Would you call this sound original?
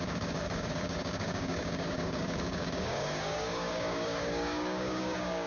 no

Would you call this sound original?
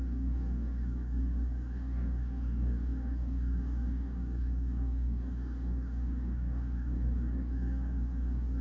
no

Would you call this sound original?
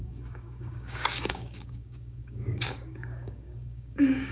no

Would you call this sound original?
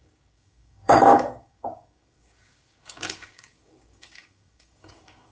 no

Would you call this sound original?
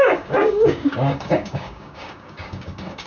no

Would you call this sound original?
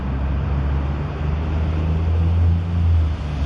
yes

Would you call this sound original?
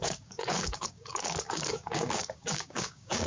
no